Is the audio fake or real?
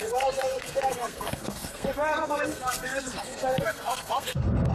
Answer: fake